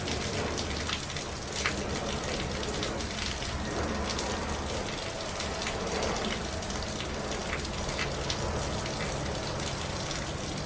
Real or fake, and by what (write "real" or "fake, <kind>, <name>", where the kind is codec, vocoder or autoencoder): real